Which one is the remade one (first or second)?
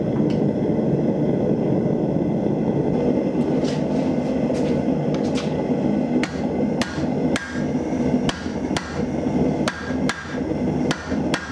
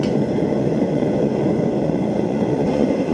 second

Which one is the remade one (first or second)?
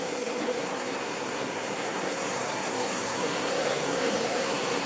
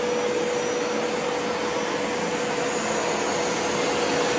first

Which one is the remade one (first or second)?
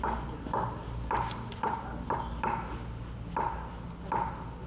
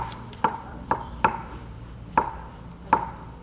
second